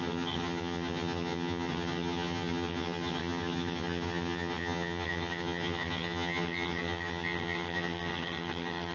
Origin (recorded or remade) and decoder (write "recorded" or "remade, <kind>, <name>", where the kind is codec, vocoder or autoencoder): remade, vocoder, HiFi-GAN